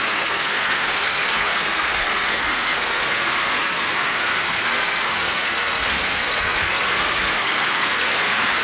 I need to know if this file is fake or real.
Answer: fake